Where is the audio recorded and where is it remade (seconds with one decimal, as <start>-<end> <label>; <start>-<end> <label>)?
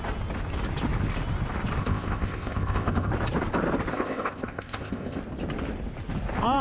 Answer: 0.0-1.8 recorded; 1.8-3.1 remade; 3.1-3.9 recorded; 3.9-5.2 remade; 5.2-6.6 recorded